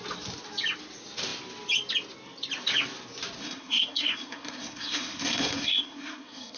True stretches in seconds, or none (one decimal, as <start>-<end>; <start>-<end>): 0.0-3.4